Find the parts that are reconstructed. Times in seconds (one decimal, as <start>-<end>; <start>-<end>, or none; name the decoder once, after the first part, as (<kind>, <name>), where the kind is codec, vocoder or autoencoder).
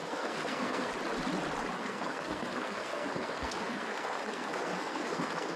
0.0-0.9 (codec, SNAC); 1.8-5.6